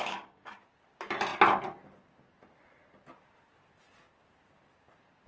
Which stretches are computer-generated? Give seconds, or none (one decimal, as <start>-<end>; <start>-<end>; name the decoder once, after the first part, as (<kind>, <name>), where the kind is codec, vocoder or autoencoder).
0.0-0.6 (codec, DAC)